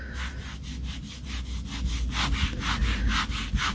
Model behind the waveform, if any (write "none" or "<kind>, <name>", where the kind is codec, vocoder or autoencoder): none